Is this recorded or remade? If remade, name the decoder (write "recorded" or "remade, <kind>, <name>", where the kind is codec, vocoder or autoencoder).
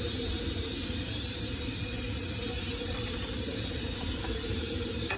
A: remade, vocoder, BigVGAN v2